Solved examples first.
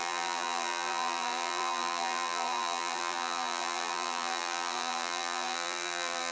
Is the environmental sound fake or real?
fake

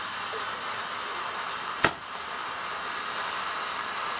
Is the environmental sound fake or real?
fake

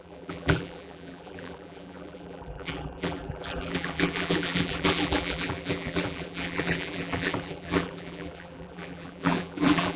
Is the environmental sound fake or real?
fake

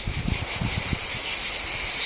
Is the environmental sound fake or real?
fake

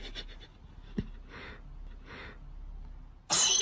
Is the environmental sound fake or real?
real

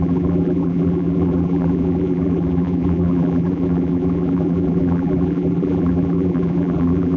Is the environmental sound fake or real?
fake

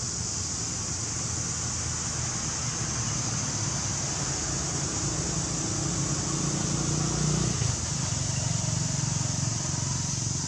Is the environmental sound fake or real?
real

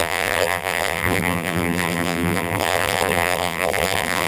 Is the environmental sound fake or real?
fake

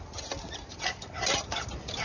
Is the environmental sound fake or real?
fake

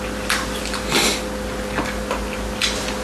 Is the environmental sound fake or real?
real